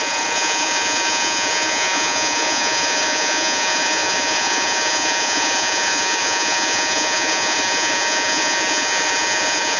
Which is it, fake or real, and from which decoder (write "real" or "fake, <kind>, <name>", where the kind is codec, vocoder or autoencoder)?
fake, vocoder, Vocos